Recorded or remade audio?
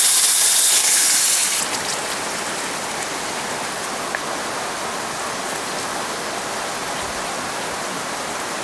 recorded